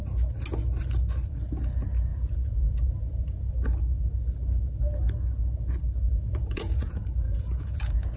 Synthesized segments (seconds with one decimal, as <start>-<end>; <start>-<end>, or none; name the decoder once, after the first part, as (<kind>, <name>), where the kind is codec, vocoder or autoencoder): 2.1-3.5 (vocoder, Vocos); 6.1-8.2